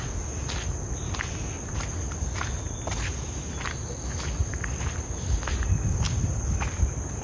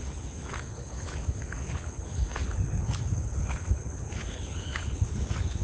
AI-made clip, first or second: second